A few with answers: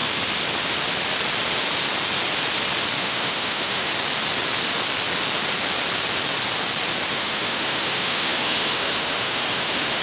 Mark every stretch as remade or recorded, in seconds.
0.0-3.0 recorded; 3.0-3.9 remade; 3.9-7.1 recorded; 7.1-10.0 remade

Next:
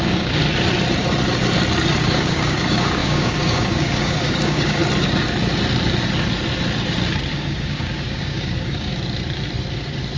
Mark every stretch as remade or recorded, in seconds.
0.0-0.4 remade; 0.4-2.0 recorded; 2.0-4.8 remade; 4.8-7.3 recorded; 7.3-8.9 remade; 8.9-10.2 recorded

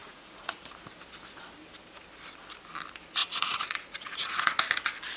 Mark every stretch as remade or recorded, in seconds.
0.0-0.7 remade; 0.7-3.2 recorded; 3.2-4.6 remade; 4.6-5.2 recorded